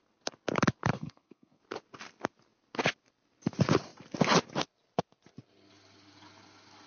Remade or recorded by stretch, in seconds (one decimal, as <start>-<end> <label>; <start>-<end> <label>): 0.0-0.9 recorded; 0.9-1.6 remade; 1.6-6.9 recorded